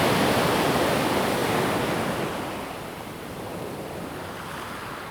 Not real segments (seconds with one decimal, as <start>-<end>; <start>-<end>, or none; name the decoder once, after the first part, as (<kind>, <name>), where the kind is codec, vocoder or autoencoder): none